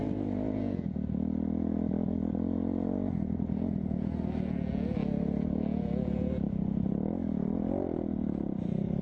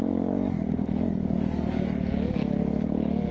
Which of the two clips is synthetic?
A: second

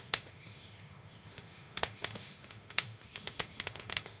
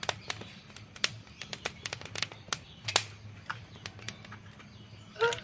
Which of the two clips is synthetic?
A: first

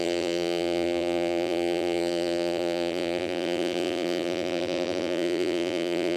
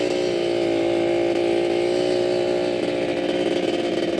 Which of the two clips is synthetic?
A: first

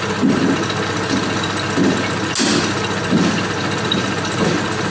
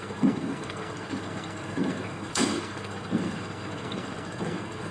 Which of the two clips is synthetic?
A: second